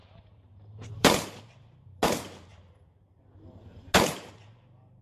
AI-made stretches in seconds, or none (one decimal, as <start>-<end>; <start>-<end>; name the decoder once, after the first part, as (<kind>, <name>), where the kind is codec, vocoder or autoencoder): 0.0-1.4 (vocoder, BigVGAN v2)

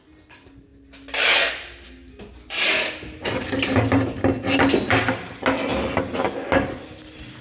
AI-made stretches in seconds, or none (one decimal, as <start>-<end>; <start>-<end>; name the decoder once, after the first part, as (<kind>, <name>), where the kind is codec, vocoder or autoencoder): none